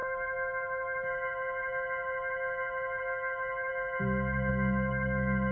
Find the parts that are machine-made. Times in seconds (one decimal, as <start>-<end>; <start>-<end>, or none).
3.0-3.7; 4.5-5.5